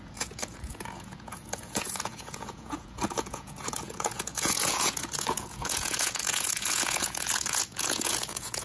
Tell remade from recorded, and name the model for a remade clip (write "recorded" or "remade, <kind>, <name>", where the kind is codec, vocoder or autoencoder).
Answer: remade, vocoder, Vocos